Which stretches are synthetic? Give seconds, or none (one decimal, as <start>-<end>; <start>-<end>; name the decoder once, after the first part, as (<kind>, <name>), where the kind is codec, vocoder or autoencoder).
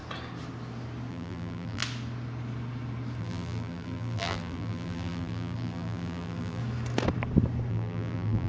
1.1-1.8 (vocoder, BigVGAN v2); 3.2-6.6; 7.7-8.5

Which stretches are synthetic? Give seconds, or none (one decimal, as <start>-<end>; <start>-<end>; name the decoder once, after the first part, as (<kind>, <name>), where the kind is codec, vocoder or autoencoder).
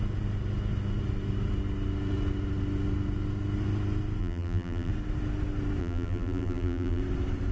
4.2-4.9 (vocoder, BigVGAN v2); 5.8-7.0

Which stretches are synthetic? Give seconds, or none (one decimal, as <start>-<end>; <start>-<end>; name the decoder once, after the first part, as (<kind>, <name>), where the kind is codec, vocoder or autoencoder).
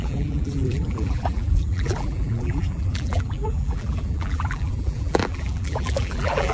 0.0-6.5 (vocoder, BigVGAN v2)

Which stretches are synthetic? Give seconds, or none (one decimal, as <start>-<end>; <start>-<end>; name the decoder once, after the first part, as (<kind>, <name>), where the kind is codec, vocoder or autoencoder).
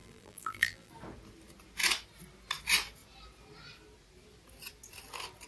0.0-0.9 (vocoder, BigVGAN v2)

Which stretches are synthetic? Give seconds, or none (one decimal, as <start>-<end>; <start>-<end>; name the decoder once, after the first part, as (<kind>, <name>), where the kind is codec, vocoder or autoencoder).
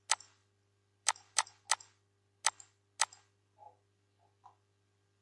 none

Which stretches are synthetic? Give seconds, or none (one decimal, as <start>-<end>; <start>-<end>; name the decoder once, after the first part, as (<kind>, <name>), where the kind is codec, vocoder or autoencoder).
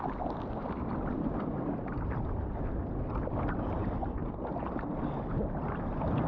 none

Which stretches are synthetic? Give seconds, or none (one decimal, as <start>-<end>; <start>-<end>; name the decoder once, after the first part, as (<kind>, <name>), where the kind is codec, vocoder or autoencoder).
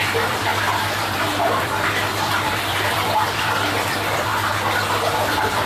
0.0-4.3 (vocoder, BigVGAN v2); 5.3-5.7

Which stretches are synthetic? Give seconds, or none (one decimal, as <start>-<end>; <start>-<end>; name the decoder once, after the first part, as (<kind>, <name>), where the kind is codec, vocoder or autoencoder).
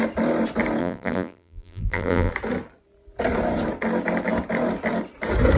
0.8-2.3 (vocoder, BigVGAN v2)